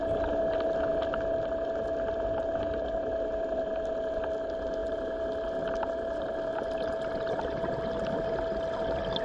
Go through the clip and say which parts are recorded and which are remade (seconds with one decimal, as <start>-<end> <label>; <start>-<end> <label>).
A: 0.0-9.2 recorded